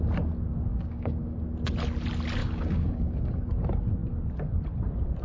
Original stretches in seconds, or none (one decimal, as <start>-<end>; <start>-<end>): 0.0-0.7; 1.4-2.4; 3.5-5.2